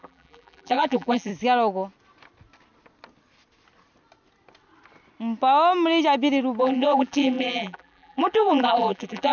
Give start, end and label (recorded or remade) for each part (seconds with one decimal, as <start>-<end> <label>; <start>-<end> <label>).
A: 0.0-1.3 remade; 1.3-6.6 recorded; 6.6-9.3 remade